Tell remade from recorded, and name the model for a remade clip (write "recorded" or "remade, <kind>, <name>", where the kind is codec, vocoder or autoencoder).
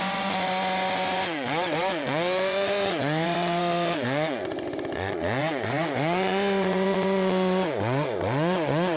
remade, vocoder, Vocos